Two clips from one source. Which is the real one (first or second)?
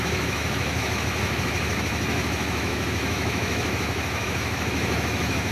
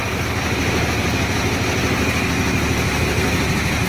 second